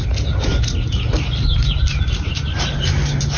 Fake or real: real